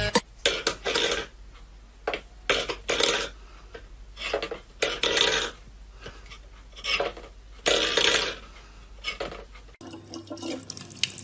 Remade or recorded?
recorded